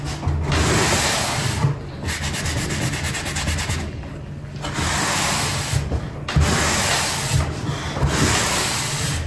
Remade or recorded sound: recorded